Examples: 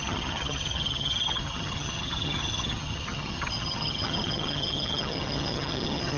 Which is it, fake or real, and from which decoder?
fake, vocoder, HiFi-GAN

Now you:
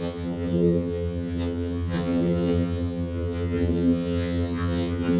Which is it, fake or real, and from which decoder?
fake, vocoder, HiFi-GAN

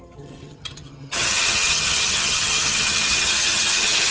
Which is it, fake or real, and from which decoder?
fake, vocoder, HiFi-GAN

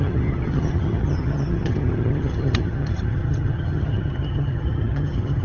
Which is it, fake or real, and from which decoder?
fake, vocoder, HiFi-GAN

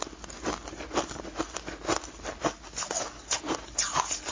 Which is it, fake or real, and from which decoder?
real